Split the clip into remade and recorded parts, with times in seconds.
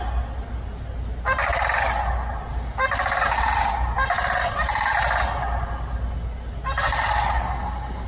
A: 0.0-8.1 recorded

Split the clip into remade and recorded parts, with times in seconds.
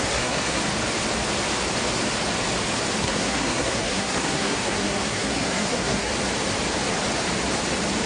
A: 0.0-0.6 remade; 0.6-3.0 recorded; 3.0-6.1 remade; 6.1-8.1 recorded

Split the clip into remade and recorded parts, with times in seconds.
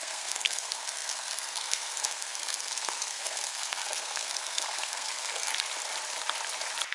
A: 0.0-5.5 remade; 5.5-6.9 recorded